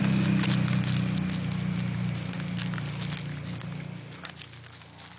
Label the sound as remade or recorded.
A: recorded